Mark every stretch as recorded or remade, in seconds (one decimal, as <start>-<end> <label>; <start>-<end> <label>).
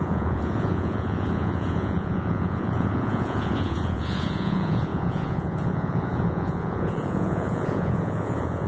0.0-8.7 remade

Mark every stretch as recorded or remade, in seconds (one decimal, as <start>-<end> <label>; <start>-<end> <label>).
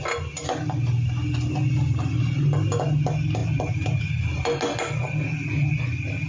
0.0-3.4 recorded; 3.4-4.0 remade; 4.0-6.3 recorded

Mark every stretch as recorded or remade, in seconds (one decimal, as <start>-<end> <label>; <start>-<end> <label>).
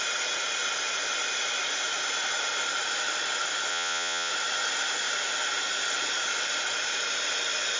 0.0-3.7 recorded; 3.7-4.3 remade; 4.3-7.8 recorded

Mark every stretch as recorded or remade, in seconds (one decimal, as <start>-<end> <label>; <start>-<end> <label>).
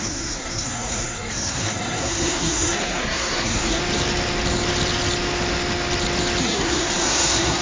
0.0-3.8 remade; 3.8-6.4 recorded; 6.4-7.6 remade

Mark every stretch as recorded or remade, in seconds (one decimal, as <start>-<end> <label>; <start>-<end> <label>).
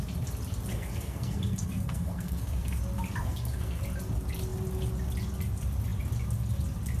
0.0-0.7 recorded; 0.7-2.8 remade; 2.8-3.2 recorded; 3.2-3.8 remade; 3.8-7.0 recorded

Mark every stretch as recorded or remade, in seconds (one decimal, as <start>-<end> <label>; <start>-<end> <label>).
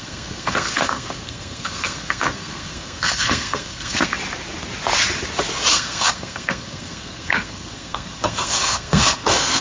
0.0-4.2 remade; 4.2-5.7 recorded; 5.7-9.6 remade